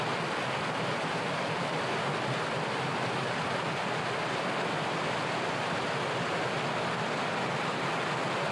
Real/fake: real